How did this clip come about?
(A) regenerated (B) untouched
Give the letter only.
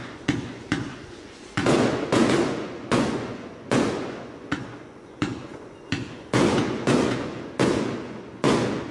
A